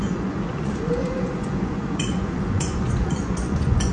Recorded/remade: remade